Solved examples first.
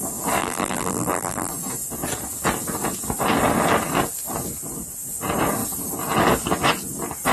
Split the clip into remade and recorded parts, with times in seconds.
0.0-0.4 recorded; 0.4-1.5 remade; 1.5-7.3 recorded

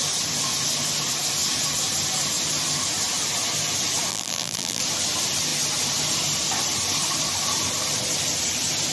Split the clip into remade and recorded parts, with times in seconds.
0.0-4.1 recorded; 4.1-4.8 remade; 4.8-8.9 recorded

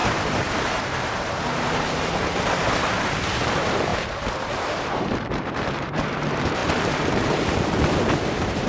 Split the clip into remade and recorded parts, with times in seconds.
0.0-8.7 remade

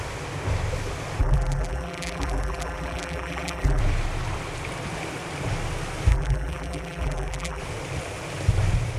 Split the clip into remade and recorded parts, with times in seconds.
0.0-1.2 recorded; 1.2-3.8 remade; 3.8-6.1 recorded; 6.1-7.6 remade; 7.6-9.0 recorded

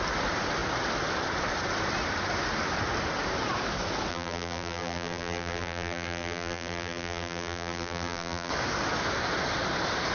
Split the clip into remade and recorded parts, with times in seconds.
0.0-4.1 recorded; 4.1-8.5 remade; 8.5-10.1 recorded

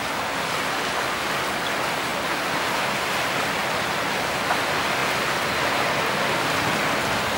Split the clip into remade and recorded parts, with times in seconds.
0.0-7.4 recorded